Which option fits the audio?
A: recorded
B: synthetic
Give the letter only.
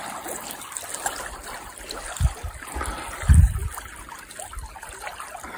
A